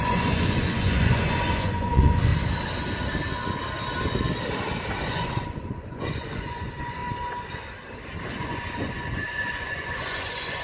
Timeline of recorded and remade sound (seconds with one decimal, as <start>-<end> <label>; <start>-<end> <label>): 0.0-2.3 remade; 2.3-5.0 recorded; 5.0-7.0 remade; 7.0-8.3 recorded; 8.3-10.6 remade